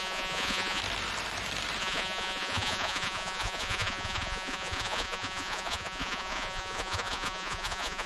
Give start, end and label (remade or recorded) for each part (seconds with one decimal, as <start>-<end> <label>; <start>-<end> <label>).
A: 0.0-0.8 remade; 0.8-1.8 recorded; 1.8-8.1 remade